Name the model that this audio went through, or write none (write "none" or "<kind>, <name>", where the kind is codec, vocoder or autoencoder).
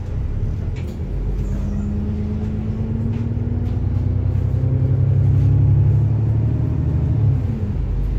none